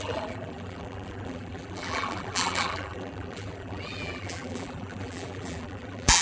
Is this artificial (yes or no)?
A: yes